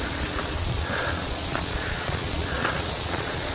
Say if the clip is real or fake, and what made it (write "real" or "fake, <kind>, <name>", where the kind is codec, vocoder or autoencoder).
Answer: fake, vocoder, Vocos